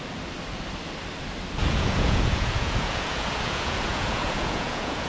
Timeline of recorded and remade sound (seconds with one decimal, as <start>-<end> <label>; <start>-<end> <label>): 0.0-1.6 recorded; 1.6-5.1 remade